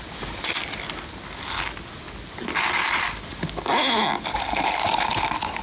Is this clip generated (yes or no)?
no